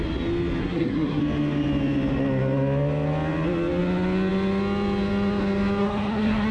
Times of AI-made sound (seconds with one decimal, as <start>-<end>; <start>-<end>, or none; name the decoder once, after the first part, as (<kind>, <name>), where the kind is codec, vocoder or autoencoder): 0.6-1.2 (codec, SNAC); 5.8-6.5